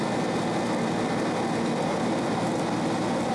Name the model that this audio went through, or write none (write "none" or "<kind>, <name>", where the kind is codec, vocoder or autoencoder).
none